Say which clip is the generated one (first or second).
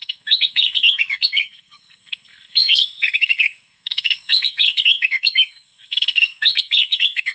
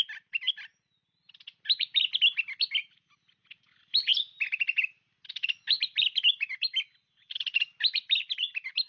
first